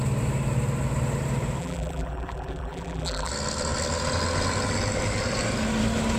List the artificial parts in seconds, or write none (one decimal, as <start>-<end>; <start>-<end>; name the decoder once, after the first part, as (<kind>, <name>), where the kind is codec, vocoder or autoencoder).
1.6-3.3 (vocoder, BigVGAN v2)